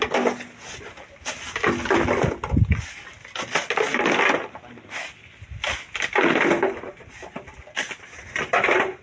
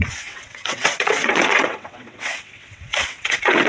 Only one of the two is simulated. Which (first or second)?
second